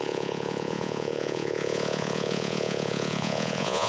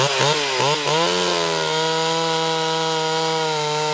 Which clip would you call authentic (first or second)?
second